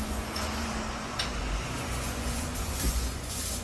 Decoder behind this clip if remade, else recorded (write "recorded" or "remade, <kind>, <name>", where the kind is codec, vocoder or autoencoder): remade, vocoder, Vocos